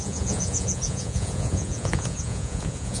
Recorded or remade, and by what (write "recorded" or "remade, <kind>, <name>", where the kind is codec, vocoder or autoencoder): remade, vocoder, Vocos